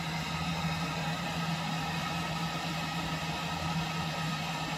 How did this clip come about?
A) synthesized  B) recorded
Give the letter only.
B